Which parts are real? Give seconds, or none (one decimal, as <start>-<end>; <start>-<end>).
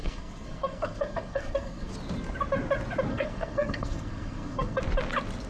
1.9-3.1; 4.8-5.5